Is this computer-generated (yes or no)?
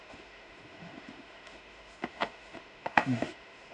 yes